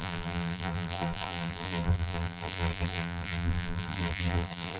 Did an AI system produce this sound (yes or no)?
yes